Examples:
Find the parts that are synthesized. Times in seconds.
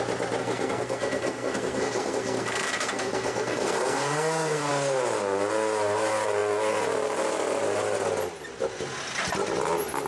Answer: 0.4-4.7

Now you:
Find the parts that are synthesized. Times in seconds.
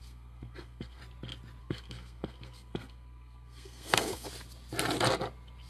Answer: 0.0-1.0; 1.6-4.3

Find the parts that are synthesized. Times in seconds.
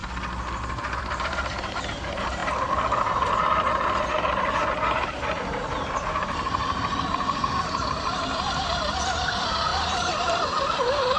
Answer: 1.0-2.4; 6.1-9.7; 10.2-11.2